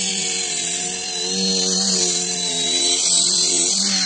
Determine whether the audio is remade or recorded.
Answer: recorded